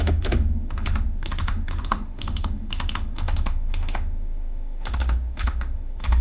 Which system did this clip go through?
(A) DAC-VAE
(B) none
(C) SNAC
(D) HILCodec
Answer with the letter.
A